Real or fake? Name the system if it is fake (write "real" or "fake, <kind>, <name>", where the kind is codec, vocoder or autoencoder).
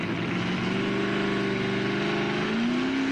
real